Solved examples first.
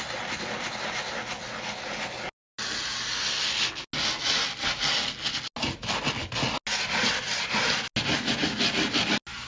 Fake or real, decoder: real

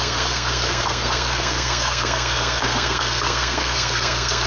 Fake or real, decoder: fake, codec, SNAC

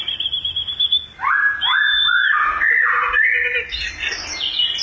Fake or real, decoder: real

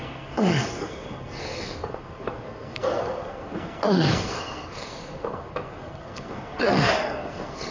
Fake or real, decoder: fake, codec, SNAC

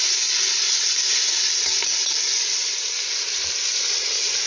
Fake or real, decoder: real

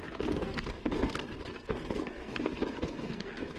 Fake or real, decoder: fake, codec, SNAC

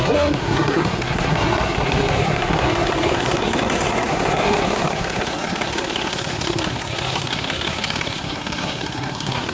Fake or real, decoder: fake, codec, SNAC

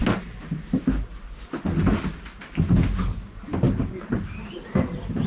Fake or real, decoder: real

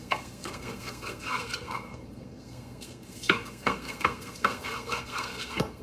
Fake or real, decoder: fake, codec, SNAC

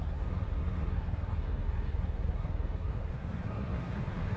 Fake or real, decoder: fake, codec, SNAC